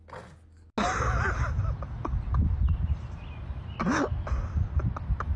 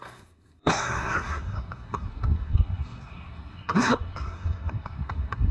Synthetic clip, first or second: second